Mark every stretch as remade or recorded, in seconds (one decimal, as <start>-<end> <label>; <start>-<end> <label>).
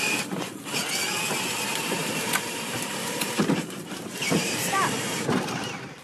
0.0-2.0 recorded; 2.0-5.5 remade; 5.5-6.0 recorded